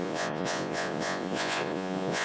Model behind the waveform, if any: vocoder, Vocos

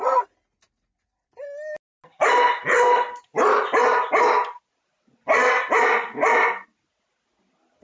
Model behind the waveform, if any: none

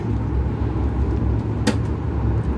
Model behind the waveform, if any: none